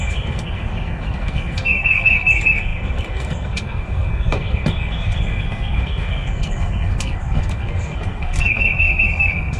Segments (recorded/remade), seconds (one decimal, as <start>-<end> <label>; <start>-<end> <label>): 0.0-9.6 remade